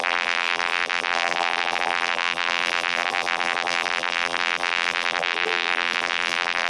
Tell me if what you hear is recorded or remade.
remade